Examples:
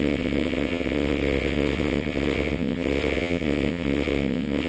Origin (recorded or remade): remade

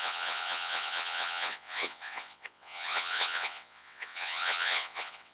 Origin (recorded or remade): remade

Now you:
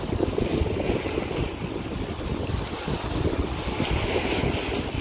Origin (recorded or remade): recorded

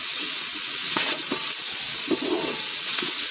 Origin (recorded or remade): remade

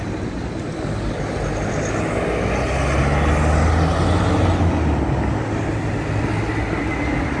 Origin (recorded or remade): recorded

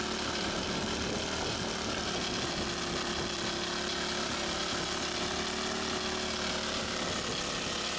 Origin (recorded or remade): recorded